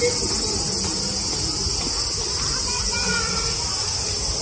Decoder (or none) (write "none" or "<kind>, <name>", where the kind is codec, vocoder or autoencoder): none